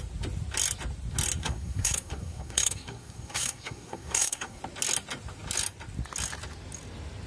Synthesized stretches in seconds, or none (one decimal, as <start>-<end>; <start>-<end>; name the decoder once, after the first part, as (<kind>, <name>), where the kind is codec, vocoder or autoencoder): 1.4-4.6 (codec, SNAC)